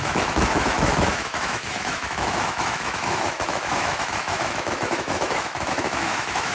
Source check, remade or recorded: remade